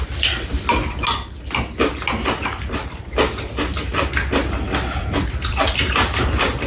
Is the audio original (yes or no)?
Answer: yes